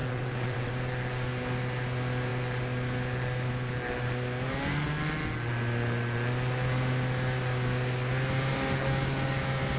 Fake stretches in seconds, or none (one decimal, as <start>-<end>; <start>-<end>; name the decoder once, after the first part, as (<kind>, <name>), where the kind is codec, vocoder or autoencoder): 0.0-0.7 (vocoder, WaveNeXt)